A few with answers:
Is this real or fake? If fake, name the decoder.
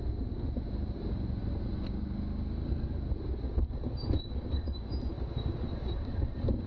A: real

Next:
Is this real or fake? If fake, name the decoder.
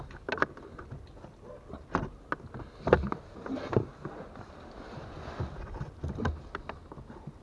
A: real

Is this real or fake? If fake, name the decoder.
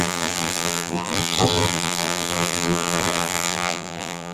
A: fake, vocoder, BigVGAN v2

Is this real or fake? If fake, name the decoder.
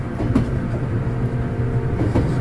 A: real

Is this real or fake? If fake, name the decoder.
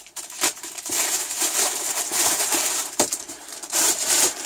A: fake, vocoder, BigVGAN v2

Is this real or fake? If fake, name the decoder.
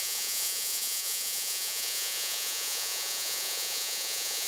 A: fake, vocoder, Vocos